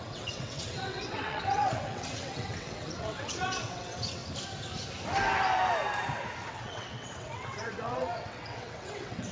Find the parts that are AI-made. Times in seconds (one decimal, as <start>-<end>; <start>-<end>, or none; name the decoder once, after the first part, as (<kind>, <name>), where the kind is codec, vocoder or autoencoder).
0.0-4.2 (vocoder, WaveNeXt); 6.5-9.3